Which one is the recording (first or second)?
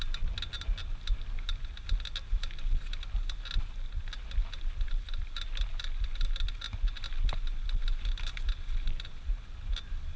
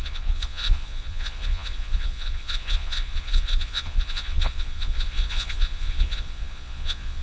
first